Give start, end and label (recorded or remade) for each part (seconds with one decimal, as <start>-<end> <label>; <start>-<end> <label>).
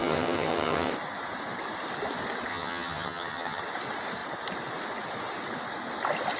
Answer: 0.0-0.9 remade; 0.9-2.5 recorded; 2.5-3.6 remade; 3.6-6.4 recorded